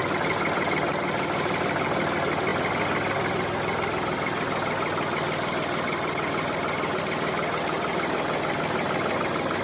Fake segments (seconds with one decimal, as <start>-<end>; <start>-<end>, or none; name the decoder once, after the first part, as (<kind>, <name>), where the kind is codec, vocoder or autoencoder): none